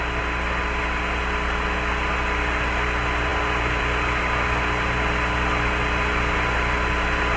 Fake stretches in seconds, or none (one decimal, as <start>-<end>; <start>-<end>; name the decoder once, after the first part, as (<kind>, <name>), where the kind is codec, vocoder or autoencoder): none